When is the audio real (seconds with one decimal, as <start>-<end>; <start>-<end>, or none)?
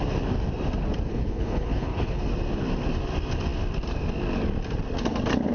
0.0-1.1; 2.2-5.5